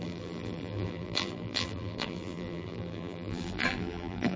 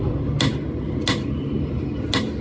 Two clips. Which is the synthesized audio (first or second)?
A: first